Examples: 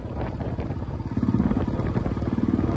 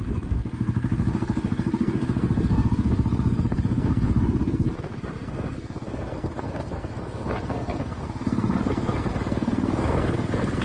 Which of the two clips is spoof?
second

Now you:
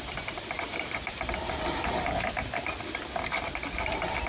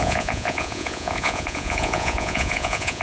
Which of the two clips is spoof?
second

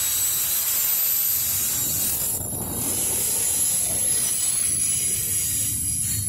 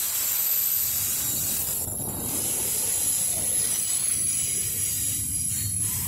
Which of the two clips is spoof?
second